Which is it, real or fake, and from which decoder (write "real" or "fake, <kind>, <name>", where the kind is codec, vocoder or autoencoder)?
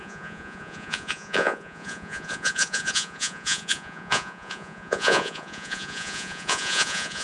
fake, vocoder, Vocos